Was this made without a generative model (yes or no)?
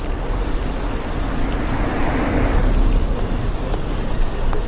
yes